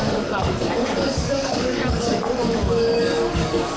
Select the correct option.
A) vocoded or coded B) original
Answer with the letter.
A